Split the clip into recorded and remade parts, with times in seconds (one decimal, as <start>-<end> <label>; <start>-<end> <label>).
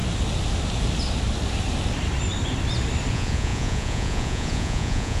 0.0-3.1 recorded; 3.1-5.2 remade